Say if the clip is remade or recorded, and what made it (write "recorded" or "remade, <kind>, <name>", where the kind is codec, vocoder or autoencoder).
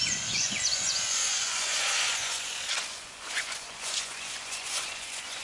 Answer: remade, vocoder, Vocos